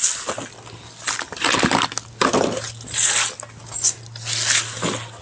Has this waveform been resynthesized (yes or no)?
no